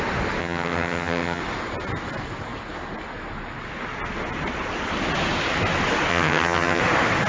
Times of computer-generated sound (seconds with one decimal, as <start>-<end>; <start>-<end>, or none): 0.4-1.4; 6.1-6.8